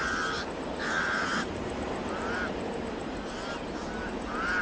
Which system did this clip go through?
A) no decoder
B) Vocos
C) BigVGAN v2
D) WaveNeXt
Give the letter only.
A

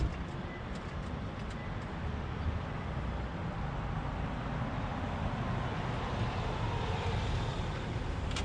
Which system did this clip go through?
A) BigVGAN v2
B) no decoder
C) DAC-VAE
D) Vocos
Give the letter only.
B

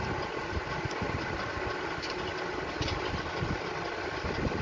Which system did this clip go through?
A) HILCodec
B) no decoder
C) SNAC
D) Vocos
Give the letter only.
B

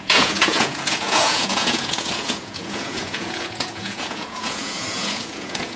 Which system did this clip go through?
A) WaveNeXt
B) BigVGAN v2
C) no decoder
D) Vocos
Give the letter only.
D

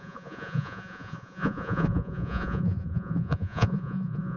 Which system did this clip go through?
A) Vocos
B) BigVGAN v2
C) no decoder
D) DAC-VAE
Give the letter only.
A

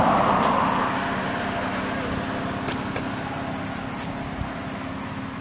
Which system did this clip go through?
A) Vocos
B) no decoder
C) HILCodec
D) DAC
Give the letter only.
B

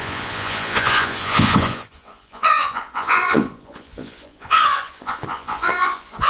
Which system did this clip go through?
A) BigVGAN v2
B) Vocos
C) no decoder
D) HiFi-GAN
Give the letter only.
B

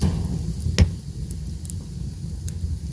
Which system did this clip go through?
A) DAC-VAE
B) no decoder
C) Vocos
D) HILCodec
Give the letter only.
B